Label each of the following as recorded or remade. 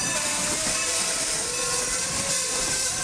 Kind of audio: remade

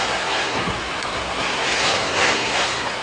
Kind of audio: remade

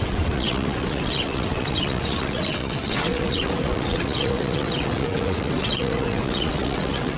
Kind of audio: remade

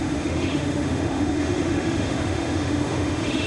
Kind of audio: remade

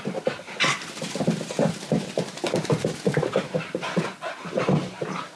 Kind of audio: recorded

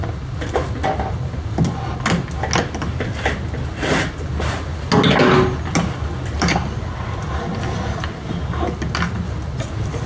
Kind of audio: recorded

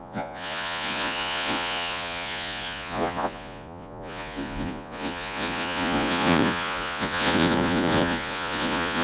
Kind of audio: remade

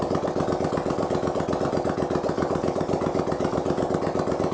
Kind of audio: remade